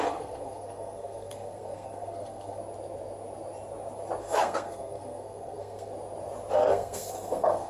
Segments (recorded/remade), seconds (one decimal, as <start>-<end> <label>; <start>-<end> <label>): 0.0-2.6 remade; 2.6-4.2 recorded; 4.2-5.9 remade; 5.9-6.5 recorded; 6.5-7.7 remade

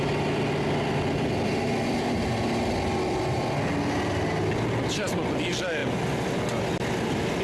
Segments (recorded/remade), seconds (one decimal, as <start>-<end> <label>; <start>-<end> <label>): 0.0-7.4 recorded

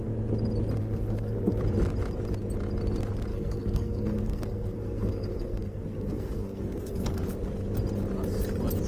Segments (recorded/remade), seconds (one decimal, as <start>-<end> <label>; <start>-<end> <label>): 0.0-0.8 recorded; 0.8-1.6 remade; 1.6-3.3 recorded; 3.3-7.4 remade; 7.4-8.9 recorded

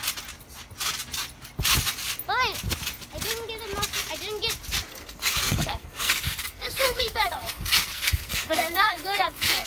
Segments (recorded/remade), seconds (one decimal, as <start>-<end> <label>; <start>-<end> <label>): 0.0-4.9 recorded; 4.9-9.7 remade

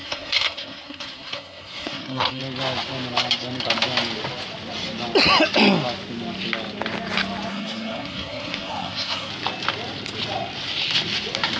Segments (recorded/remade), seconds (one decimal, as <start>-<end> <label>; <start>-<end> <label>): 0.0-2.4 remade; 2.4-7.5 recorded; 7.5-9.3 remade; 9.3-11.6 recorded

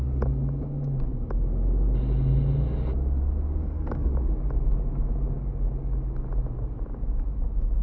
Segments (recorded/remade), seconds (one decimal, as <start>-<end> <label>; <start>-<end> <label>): 0.0-3.6 recorded; 3.6-4.1 remade; 4.1-7.8 recorded

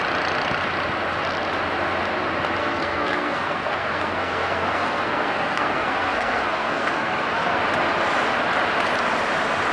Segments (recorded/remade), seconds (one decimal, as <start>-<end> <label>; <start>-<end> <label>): 0.0-2.6 recorded; 2.6-7.6 remade; 7.6-9.7 recorded

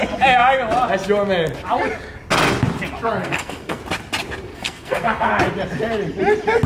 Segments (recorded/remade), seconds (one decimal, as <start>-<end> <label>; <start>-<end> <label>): 0.0-3.2 recorded; 3.2-3.8 remade; 3.8-4.5 recorded; 4.5-5.3 remade; 5.3-6.7 recorded